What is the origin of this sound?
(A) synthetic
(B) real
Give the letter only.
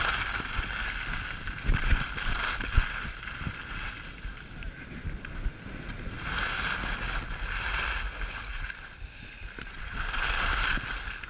B